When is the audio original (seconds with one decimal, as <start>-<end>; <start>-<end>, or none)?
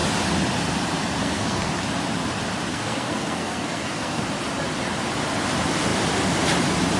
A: 0.0-1.2; 1.7-2.7; 4.2-7.0